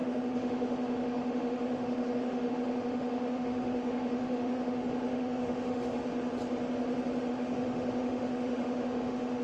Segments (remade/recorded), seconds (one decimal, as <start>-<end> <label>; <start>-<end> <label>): 0.0-6.0 remade; 6.0-7.3 recorded; 7.3-9.4 remade

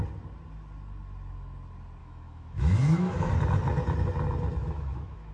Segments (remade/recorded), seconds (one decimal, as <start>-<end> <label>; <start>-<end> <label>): 0.0-2.0 recorded; 2.0-3.3 remade; 3.3-4.6 recorded; 4.6-5.3 remade

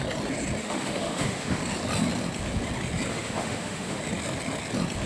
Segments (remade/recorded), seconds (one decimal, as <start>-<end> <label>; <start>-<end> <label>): 0.0-0.6 recorded; 0.6-1.6 remade; 1.6-3.1 recorded; 3.1-4.0 remade; 4.0-5.1 recorded

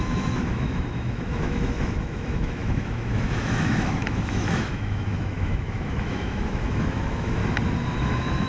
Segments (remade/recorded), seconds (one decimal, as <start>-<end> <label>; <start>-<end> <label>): 0.0-7.4 remade; 7.4-8.0 recorded; 8.0-8.5 remade

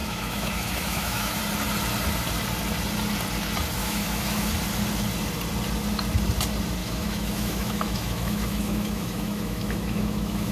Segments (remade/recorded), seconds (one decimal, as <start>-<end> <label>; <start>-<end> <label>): 0.0-1.4 remade; 1.4-3.8 recorded; 3.8-4.5 remade; 4.5-6.8 recorded; 6.8-10.5 remade

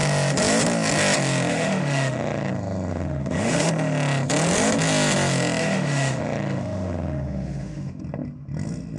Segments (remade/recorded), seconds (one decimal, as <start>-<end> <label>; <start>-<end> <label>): 0.0-1.5 recorded; 1.5-2.5 remade; 2.5-2.9 recorded; 2.9-3.7 remade; 3.7-5.6 recorded; 5.6-8.0 remade; 8.0-9.0 recorded

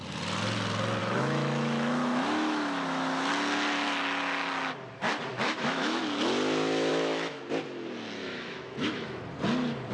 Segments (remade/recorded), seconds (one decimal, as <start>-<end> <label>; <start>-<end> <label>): 0.0-1.0 recorded; 1.0-3.3 remade; 3.3-5.3 recorded; 5.3-6.0 remade; 6.0-6.9 recorded; 6.9-7.4 remade; 7.4-8.2 recorded; 8.2-9.2 remade; 9.2-9.9 recorded